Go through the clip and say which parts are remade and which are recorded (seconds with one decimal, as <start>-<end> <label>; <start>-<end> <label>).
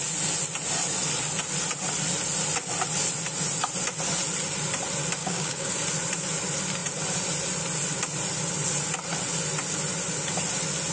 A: 0.0-5.2 recorded; 5.2-5.7 remade; 5.7-10.9 recorded